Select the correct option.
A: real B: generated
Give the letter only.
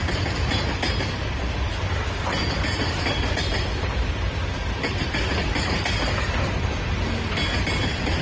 A